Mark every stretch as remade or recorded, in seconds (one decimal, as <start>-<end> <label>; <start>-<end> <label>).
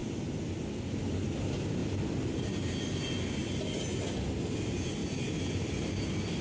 0.0-1.4 recorded; 1.4-1.8 remade; 1.8-3.8 recorded; 3.8-6.4 remade